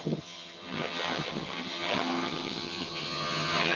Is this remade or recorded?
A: remade